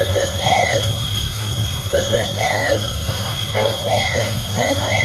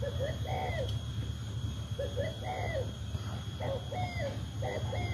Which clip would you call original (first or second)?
second